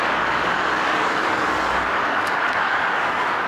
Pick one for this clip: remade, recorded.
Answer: remade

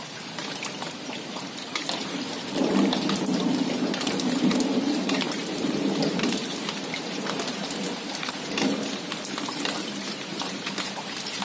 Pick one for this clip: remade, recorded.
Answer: remade